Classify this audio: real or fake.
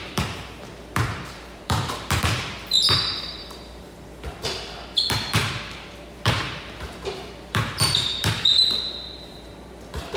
fake